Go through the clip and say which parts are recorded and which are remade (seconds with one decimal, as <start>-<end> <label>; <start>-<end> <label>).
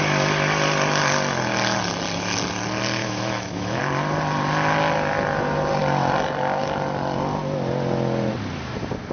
0.0-3.0 recorded; 3.0-3.8 remade; 3.8-9.1 recorded